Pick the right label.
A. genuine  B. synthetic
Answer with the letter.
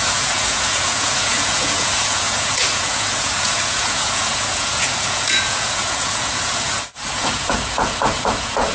B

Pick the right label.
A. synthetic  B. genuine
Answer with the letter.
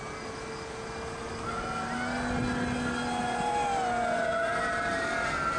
B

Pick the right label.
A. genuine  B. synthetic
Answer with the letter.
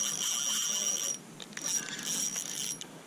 A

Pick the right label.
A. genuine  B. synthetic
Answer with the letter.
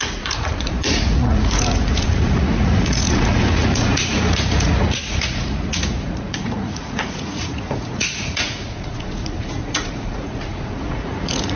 B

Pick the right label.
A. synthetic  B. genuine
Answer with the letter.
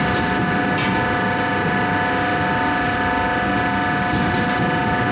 B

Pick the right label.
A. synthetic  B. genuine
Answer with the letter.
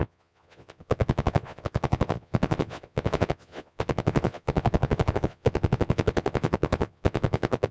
A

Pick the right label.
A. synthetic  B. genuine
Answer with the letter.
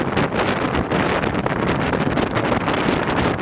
B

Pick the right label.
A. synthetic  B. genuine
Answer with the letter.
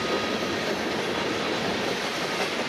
B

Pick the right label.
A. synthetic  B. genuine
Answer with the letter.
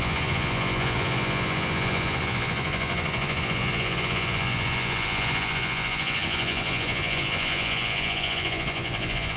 A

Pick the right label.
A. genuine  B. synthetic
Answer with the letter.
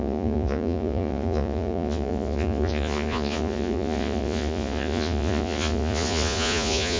B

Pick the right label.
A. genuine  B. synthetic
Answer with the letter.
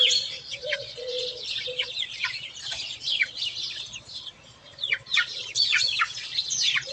B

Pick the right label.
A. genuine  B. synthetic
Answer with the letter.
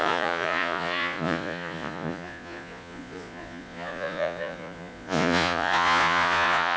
B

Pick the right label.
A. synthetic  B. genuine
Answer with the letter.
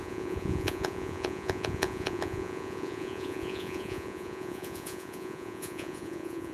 A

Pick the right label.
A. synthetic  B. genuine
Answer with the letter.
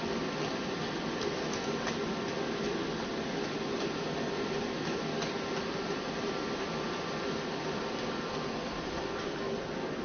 B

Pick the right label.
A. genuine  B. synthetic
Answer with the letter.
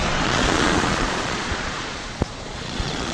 B